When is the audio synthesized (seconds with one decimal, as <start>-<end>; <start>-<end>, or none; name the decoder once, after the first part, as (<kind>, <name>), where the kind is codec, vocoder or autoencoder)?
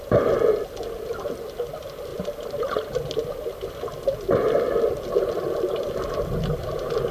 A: none